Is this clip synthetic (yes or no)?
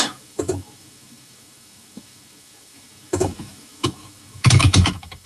yes